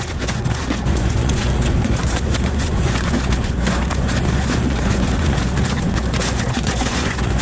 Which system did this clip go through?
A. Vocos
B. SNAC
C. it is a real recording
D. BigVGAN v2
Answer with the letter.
A